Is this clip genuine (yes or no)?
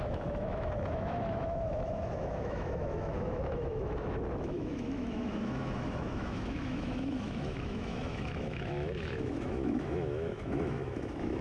no